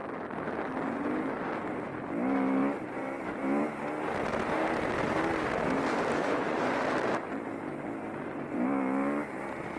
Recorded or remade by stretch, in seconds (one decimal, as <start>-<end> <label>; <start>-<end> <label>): 0.0-6.2 recorded; 6.2-6.8 remade; 6.8-9.8 recorded